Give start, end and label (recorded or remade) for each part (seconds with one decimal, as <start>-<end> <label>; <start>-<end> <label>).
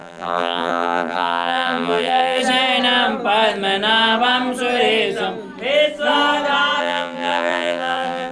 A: 0.0-2.4 remade; 2.4-6.8 recorded; 6.8-8.3 remade